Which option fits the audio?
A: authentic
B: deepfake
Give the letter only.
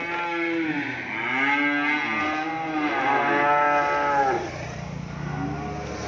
A